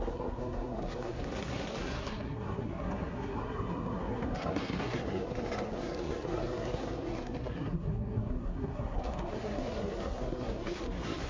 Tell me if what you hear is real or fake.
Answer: fake